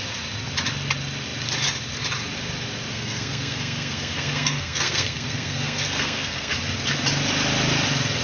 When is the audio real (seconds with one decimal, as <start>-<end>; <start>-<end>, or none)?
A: 0.0-2.9; 6.5-8.2